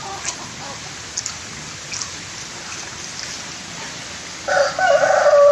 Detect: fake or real real